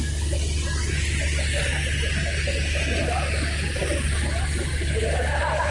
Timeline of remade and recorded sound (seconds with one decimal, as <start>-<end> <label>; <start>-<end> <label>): 0.0-5.7 recorded